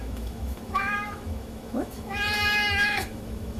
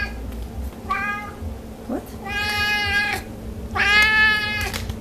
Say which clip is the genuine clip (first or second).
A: second